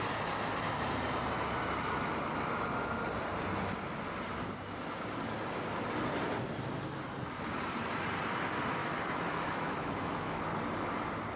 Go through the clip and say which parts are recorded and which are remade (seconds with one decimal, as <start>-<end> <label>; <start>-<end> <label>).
0.0-8.8 recorded; 8.8-10.4 remade; 10.4-11.4 recorded